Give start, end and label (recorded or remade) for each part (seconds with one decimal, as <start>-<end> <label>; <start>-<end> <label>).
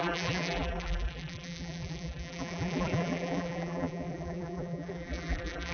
0.0-5.7 remade